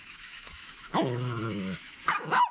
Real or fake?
fake